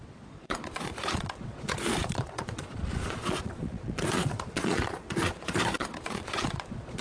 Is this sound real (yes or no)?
no